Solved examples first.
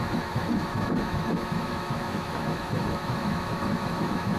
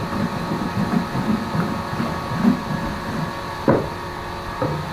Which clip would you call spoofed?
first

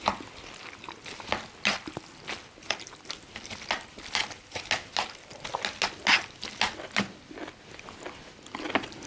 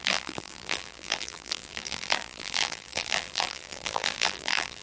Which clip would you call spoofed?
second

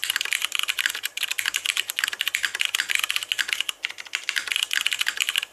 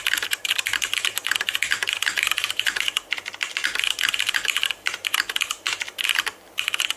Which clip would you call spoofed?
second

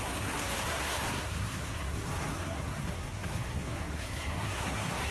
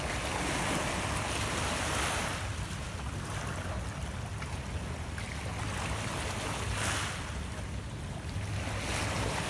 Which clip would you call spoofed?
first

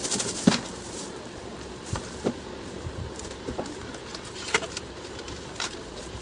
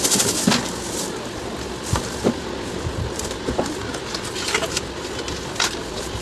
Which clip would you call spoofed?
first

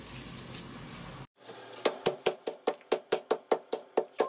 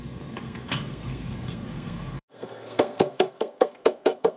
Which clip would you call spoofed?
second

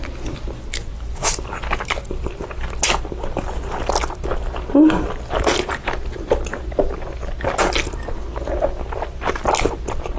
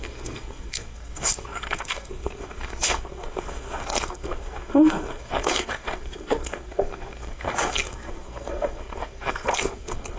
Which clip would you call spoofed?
second